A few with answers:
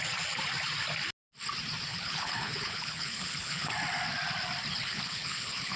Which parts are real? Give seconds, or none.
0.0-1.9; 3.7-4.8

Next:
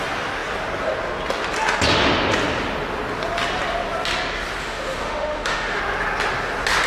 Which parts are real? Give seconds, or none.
0.0-4.6; 5.8-6.9